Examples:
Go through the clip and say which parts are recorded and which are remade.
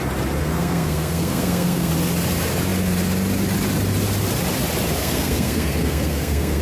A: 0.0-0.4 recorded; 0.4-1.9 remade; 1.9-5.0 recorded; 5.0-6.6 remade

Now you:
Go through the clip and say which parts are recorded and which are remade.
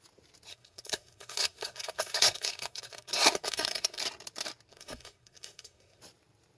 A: 0.0-0.5 recorded; 0.5-4.0 remade; 4.0-4.7 recorded; 4.7-6.0 remade; 6.0-6.6 recorded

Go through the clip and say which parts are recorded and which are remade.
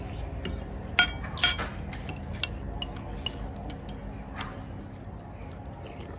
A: 0.0-6.2 recorded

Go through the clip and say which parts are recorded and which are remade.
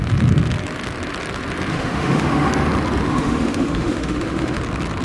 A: 0.0-1.7 recorded; 1.7-2.5 remade; 2.5-3.1 recorded; 3.1-4.6 remade; 4.6-5.0 recorded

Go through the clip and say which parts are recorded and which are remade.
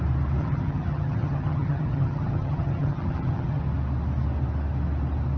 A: 0.0-0.4 recorded; 0.4-3.6 remade; 3.6-5.4 recorded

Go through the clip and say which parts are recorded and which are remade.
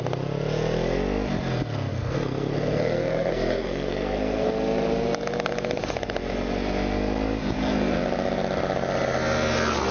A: 0.0-1.9 recorded; 1.9-4.5 remade; 4.5-9.9 recorded